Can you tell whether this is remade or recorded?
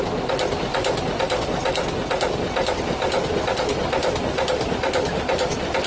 recorded